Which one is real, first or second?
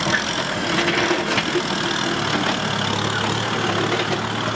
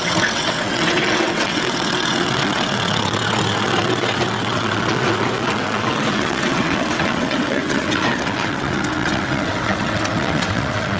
first